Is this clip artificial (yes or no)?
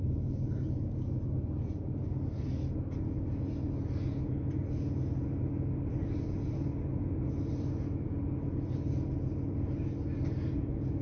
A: no